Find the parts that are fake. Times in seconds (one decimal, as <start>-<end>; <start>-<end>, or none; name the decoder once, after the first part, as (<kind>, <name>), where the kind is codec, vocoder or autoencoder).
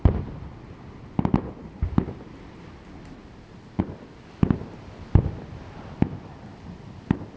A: none